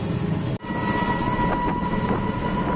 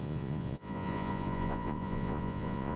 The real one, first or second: first